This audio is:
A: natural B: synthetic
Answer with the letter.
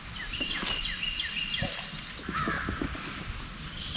A